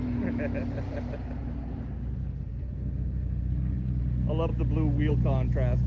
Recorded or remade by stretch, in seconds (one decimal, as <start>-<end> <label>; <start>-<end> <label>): 0.0-2.2 recorded; 2.2-4.0 remade; 4.0-5.9 recorded